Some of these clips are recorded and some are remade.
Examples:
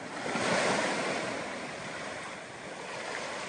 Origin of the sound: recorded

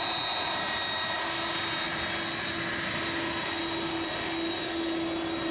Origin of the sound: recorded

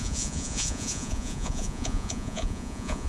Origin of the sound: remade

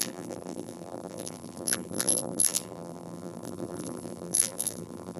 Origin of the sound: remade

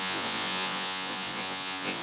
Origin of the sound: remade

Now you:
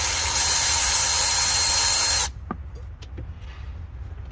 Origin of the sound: recorded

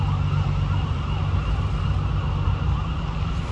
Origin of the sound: recorded